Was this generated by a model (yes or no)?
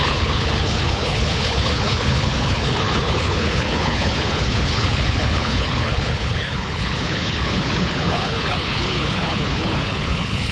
yes